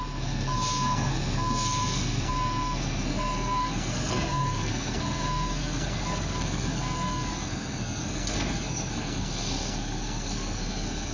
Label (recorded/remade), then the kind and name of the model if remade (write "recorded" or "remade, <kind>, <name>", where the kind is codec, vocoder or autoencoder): remade, codec, SNAC